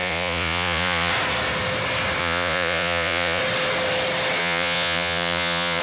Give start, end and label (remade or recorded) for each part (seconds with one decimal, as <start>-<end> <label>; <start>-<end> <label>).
0.0-1.1 remade; 1.1-2.2 recorded; 2.2-3.4 remade; 3.4-4.4 recorded; 4.4-5.8 remade